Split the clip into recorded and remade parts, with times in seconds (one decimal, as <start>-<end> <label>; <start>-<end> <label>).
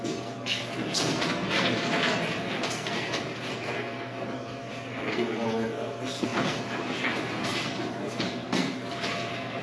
0.0-9.6 remade